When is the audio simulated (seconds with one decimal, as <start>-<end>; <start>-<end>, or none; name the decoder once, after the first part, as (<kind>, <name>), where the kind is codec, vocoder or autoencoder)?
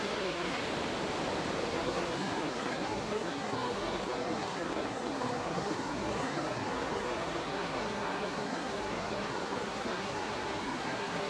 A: 0.0-0.6 (codec, SNAC); 1.7-11.3